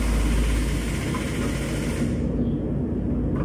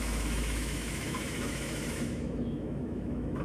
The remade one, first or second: second